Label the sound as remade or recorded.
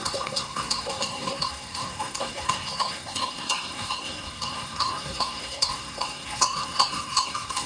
remade